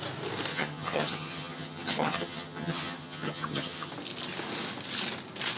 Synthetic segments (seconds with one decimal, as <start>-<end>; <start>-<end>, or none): 0.5-3.9